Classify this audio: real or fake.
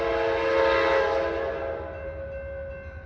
real